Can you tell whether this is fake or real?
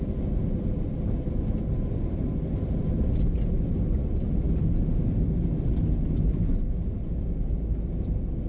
real